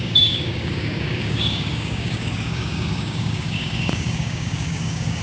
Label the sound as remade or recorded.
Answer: remade